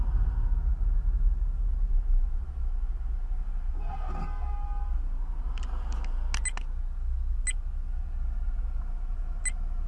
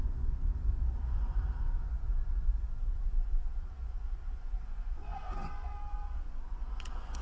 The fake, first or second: second